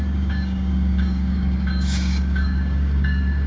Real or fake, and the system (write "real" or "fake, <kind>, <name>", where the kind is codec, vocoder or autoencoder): fake, codec, DAC